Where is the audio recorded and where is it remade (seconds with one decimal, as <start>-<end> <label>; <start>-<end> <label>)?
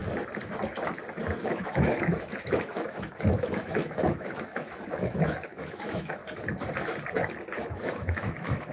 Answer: 0.0-1.4 recorded; 1.4-6.2 remade; 6.2-7.7 recorded; 7.7-8.7 remade